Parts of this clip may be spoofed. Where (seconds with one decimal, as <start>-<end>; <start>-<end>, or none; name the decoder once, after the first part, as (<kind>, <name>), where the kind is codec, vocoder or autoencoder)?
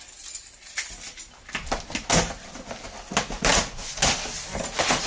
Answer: none